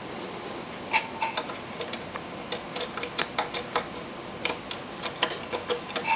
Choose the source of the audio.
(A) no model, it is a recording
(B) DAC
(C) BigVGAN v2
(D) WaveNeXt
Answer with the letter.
A